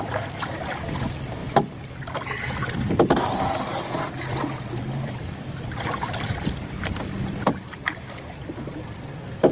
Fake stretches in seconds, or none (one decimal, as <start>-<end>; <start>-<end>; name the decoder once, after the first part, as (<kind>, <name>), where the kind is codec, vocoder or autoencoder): 0.0-1.4 (vocoder, BigVGAN v2); 3.1-9.5